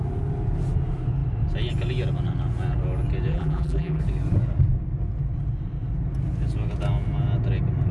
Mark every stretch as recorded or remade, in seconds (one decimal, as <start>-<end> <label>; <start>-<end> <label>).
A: 0.0-3.3 recorded; 3.3-4.0 remade; 4.0-7.9 recorded